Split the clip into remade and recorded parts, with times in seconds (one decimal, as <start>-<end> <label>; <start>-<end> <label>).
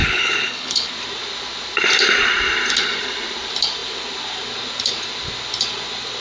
0.0-0.9 remade; 0.9-6.2 recorded